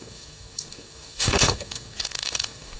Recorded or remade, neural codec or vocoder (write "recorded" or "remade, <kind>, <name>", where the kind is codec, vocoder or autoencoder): remade, codec, DAC